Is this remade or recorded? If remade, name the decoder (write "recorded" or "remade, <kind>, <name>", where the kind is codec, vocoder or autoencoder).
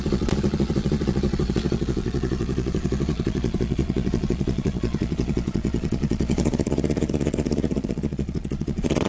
remade, vocoder, Vocos